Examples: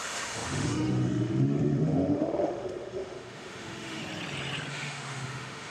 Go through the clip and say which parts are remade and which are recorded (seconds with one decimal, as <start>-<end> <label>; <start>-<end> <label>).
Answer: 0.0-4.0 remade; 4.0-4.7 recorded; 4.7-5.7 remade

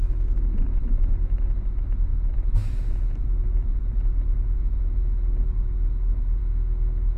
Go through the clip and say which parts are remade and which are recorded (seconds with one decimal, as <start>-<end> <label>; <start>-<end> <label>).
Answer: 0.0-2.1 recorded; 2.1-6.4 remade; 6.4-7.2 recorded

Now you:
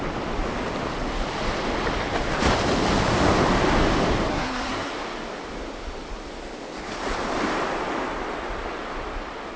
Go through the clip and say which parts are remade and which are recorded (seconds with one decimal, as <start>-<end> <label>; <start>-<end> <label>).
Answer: 0.0-4.3 recorded; 4.3-4.9 remade; 4.9-9.6 recorded